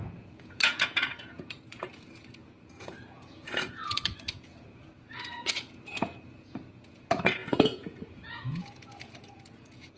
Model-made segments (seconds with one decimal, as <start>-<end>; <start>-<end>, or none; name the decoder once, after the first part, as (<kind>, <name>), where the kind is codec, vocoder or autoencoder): 0.0-10.0 (vocoder, Vocos)

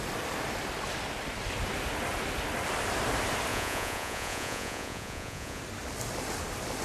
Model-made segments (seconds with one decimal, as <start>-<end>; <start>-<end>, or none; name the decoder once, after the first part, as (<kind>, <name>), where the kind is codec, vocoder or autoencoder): 3.5-5.6 (vocoder, Vocos)

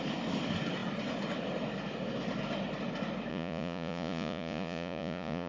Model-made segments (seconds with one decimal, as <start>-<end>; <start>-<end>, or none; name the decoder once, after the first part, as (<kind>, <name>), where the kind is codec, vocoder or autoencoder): 3.3-5.5 (vocoder, Vocos)

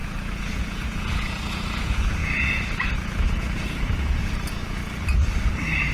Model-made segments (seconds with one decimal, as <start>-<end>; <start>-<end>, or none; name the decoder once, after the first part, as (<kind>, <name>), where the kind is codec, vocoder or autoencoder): 0.0-4.8 (vocoder, Vocos)

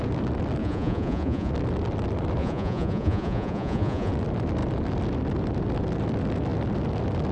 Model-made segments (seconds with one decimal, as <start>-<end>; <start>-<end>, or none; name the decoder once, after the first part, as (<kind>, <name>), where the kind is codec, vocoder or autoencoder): 0.6-1.5 (vocoder, Vocos); 2.4-4.1

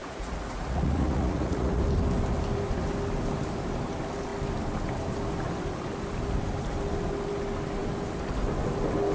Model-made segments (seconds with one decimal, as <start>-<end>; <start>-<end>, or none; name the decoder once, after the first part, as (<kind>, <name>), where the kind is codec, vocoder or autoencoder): 0.0-1.8 (vocoder, Vocos)

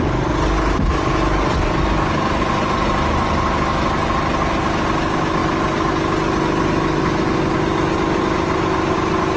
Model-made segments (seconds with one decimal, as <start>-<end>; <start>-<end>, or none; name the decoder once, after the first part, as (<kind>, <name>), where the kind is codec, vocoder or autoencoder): none